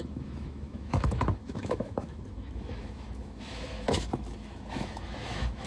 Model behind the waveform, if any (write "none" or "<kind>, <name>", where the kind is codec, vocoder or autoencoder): autoencoder, DAC-VAE